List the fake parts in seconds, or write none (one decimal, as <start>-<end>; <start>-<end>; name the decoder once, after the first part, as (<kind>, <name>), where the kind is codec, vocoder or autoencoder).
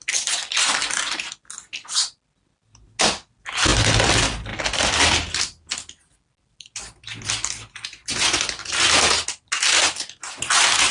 none